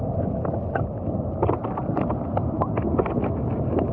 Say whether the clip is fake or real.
real